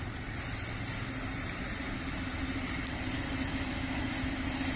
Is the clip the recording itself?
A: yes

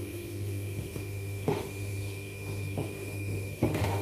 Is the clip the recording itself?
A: no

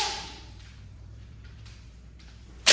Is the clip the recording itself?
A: no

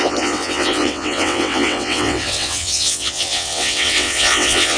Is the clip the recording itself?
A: no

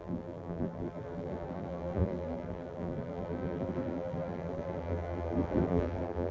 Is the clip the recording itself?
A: no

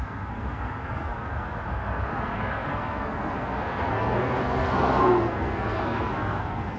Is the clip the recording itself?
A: no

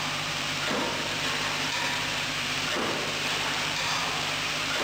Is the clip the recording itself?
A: no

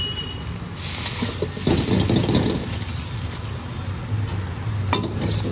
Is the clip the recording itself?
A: yes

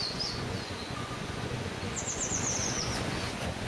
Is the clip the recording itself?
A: no